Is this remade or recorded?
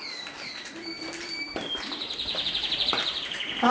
remade